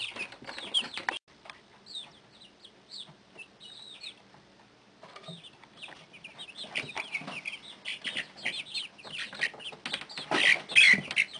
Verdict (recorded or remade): recorded